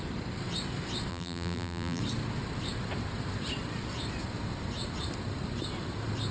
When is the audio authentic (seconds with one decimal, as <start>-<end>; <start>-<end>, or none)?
0.0-1.1; 2.0-6.3